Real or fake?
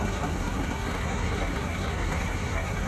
fake